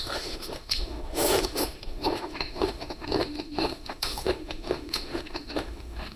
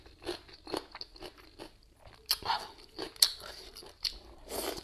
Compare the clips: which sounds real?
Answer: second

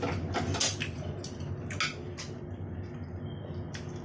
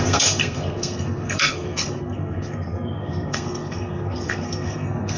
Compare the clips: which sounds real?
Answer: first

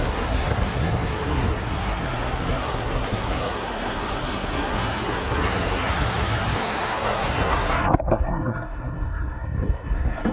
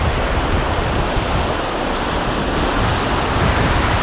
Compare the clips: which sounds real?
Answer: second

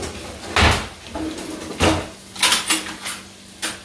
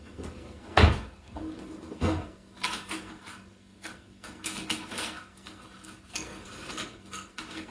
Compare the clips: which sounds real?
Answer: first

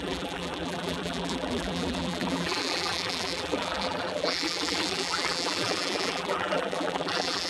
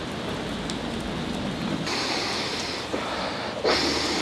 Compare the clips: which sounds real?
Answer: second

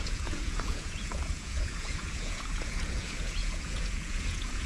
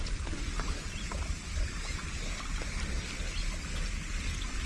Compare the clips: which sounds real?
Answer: second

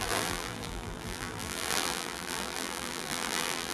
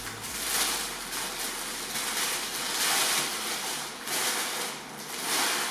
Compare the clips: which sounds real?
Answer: second